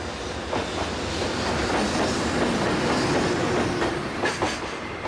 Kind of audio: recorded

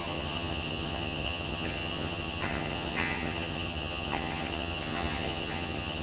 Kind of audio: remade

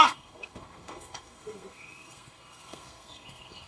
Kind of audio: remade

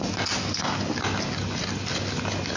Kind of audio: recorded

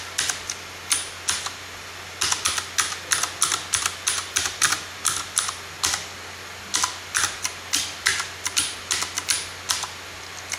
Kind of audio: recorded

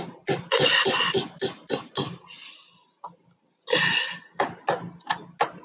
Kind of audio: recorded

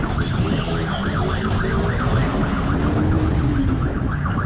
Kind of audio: recorded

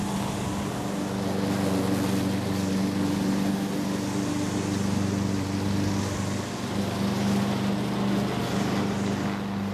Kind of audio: recorded